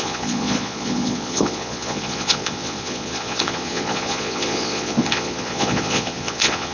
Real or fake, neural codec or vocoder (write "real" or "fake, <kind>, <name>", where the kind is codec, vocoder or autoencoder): fake, vocoder, Vocos